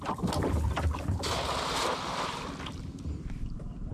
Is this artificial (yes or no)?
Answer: no